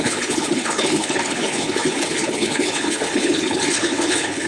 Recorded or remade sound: remade